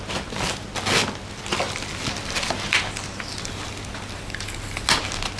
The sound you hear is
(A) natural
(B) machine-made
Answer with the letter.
A